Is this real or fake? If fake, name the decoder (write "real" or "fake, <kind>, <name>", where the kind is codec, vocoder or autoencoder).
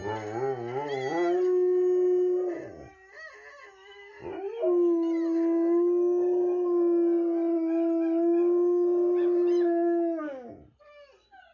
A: real